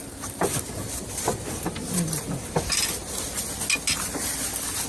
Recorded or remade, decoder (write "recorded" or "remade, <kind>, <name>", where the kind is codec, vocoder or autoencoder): recorded